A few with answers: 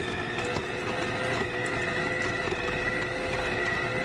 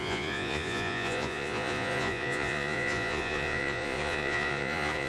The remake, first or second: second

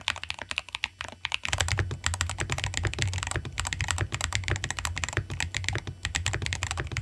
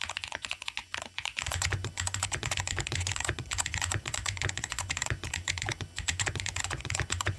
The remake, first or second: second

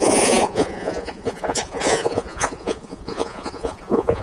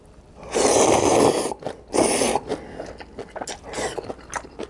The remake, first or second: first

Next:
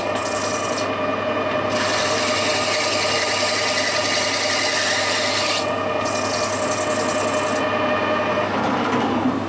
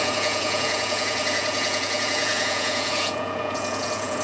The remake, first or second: second